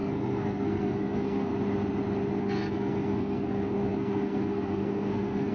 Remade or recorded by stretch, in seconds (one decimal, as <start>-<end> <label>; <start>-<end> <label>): 0.0-1.5 remade; 1.5-2.4 recorded; 2.4-5.5 remade